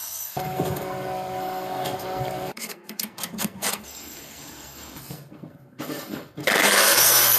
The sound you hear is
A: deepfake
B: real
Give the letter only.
A